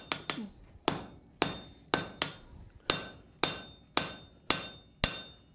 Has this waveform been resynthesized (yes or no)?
no